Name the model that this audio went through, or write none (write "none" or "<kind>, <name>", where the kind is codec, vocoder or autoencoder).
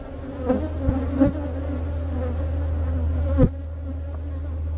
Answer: none